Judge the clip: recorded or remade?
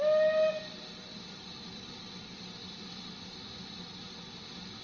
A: recorded